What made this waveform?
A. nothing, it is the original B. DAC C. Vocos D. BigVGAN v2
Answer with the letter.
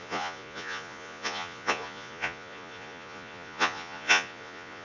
C